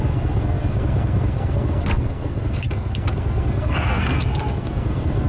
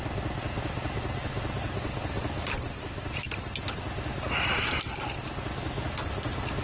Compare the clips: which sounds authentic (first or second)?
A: second